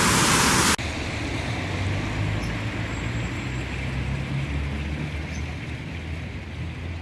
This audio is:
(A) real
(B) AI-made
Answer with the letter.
A